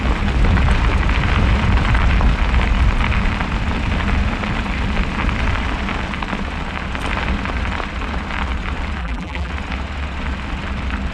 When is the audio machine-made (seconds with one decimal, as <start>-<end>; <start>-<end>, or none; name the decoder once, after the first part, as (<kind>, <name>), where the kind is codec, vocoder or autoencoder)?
9.0-9.5 (vocoder, BigVGAN v2)